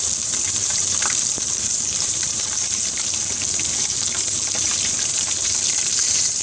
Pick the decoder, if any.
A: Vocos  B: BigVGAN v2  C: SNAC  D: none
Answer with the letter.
B